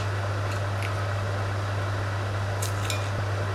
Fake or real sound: real